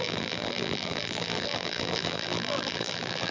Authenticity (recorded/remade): remade